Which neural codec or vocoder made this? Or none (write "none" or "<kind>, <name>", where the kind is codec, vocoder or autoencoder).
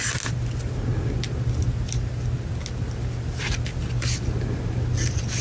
none